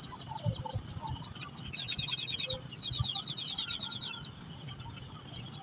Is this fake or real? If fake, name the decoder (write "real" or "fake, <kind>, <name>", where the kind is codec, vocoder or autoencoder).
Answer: real